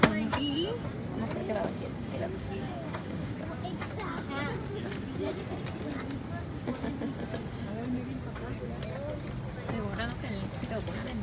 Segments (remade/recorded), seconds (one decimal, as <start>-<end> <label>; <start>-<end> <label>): 0.0-1.4 recorded; 1.4-3.3 remade; 3.3-11.2 recorded